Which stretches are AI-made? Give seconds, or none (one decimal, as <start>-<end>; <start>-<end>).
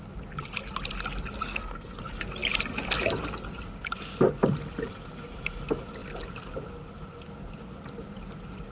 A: 1.5-2.0